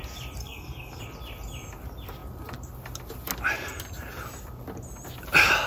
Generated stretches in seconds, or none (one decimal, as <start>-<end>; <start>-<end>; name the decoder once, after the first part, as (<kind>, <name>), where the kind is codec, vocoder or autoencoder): 0.4-1.0 (codec, SNAC)